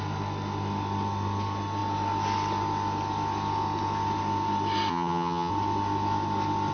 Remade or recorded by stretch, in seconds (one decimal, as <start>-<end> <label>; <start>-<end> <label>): 0.0-4.9 recorded; 4.9-5.5 remade; 5.5-6.7 recorded

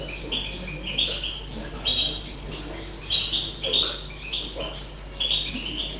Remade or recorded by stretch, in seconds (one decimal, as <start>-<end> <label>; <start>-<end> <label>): 0.0-6.0 recorded

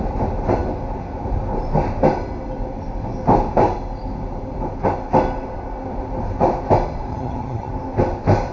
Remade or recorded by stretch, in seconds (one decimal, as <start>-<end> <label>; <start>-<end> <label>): 0.0-7.1 recorded; 7.1-7.7 remade; 7.7-8.5 recorded

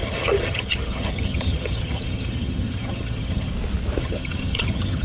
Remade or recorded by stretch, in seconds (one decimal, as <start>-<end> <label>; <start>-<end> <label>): 0.0-3.5 remade; 3.5-4.0 recorded; 4.0-5.0 remade